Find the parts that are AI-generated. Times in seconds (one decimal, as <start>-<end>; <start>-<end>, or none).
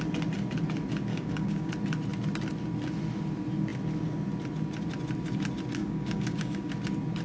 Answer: 1.1-1.7; 5.8-6.7